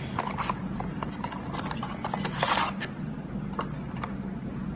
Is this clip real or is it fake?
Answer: real